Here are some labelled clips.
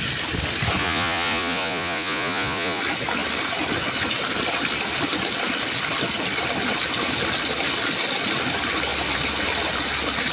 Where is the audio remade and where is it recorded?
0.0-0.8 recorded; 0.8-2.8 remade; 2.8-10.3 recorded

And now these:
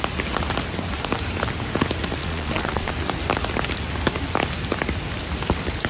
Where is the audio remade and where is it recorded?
0.0-2.2 recorded; 2.2-2.9 remade; 2.9-5.9 recorded

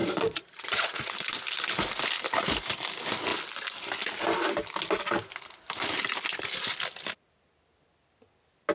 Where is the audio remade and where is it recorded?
0.0-1.1 remade; 1.1-8.7 recorded

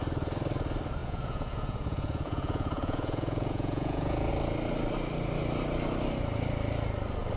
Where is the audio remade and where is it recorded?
0.0-1.0 recorded; 1.0-4.3 remade; 4.3-7.4 recorded

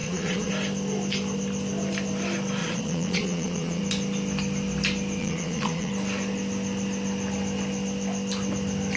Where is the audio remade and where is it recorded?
0.0-0.5 remade; 0.5-2.6 recorded; 2.6-3.8 remade; 3.8-5.2 recorded; 5.2-5.9 remade; 5.9-9.0 recorded

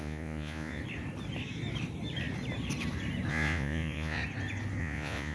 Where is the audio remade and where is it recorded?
0.0-0.8 remade; 0.8-3.3 recorded; 3.3-4.2 remade; 4.2-4.8 recorded; 4.8-5.3 remade

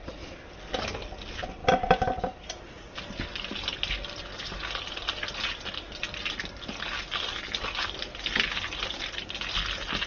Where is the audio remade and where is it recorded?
0.0-10.1 recorded

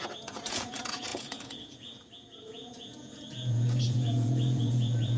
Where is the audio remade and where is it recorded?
0.0-5.2 remade